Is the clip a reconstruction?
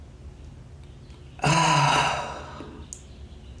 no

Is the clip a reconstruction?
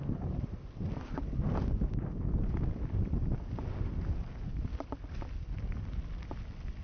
no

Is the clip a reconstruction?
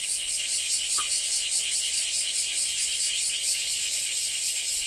yes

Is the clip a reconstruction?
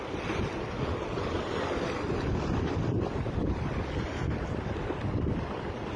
yes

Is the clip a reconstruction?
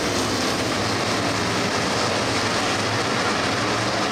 no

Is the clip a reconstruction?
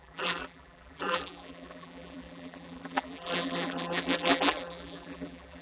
yes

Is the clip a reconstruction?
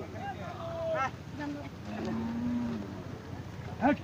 no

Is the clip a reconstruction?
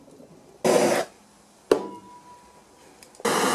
no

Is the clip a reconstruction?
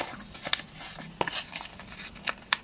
no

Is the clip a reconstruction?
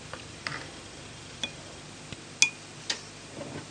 no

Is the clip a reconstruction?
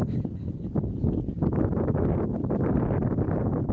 no